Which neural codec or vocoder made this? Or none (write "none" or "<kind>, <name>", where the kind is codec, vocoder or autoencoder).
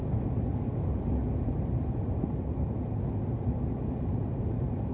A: none